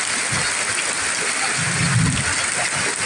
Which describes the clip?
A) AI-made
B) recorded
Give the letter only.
B